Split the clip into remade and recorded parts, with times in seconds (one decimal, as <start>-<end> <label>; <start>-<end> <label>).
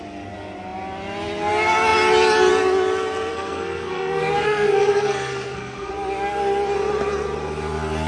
0.0-3.3 recorded; 3.3-5.9 remade; 5.9-8.1 recorded